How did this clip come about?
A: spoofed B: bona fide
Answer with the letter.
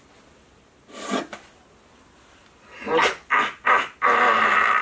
B